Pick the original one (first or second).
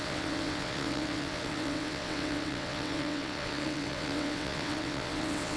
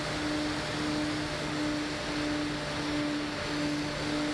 second